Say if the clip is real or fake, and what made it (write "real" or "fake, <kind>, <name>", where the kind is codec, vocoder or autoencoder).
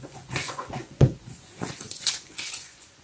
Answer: fake, vocoder, Vocos